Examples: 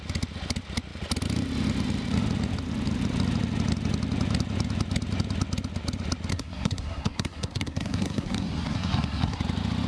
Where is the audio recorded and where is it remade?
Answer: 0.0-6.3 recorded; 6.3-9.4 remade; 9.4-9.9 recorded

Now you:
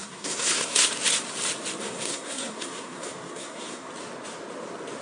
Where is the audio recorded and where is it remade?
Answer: 0.0-0.9 remade; 0.9-1.8 recorded; 1.8-3.9 remade; 3.9-5.0 recorded

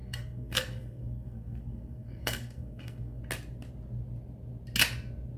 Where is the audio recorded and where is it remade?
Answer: 0.0-3.2 remade; 3.2-5.4 recorded

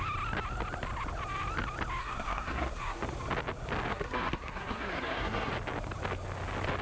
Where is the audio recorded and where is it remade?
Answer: 0.0-2.0 recorded; 2.0-3.0 remade; 3.0-3.9 recorded; 3.9-5.5 remade; 5.5-6.8 recorded

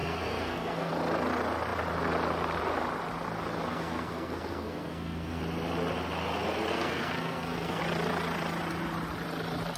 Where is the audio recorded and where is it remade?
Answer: 0.0-0.9 remade; 0.9-3.7 recorded; 3.7-5.4 remade; 5.4-6.7 recorded; 6.7-7.8 remade; 7.8-9.8 recorded